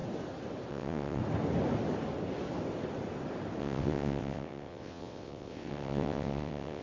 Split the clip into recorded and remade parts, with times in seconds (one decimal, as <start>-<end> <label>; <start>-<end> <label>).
0.0-0.7 recorded; 0.7-1.2 remade; 1.2-3.6 recorded; 3.6-6.8 remade